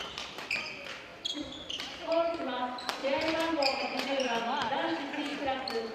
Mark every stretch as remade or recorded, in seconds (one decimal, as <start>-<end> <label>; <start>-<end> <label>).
0.0-1.1 recorded; 1.1-2.4 remade; 2.4-3.0 recorded; 3.0-4.7 remade; 4.7-5.9 recorded